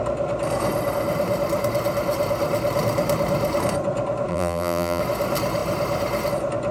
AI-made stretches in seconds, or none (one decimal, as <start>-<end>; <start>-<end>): 4.3-5.0